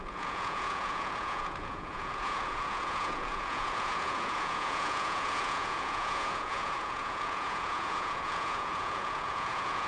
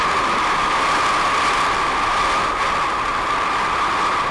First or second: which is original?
second